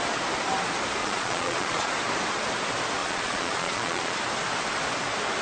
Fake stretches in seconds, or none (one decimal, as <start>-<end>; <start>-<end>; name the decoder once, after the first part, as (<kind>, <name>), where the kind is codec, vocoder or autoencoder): 1.0-1.9 (vocoder, Vocos); 3.0-4.2